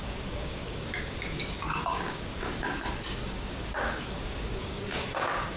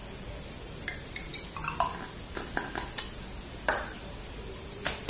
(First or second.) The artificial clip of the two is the first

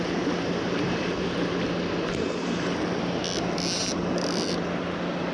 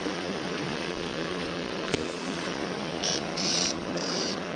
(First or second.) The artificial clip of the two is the second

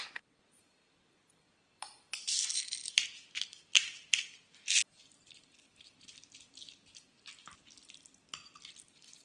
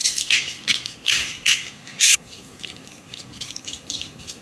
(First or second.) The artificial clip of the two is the second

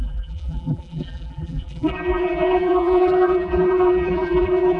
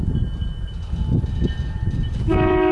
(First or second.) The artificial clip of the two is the first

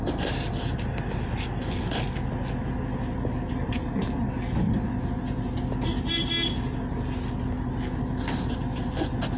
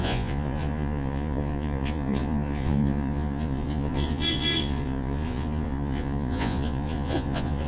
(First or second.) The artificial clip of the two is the second